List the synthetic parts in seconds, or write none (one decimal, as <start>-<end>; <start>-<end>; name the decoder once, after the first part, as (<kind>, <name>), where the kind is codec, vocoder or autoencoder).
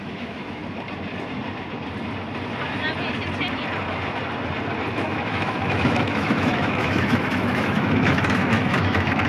0.0-0.6 (autoencoder, DAC-VAE); 4.9-9.3